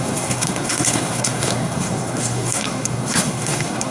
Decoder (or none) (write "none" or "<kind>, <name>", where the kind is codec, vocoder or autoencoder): codec, SNAC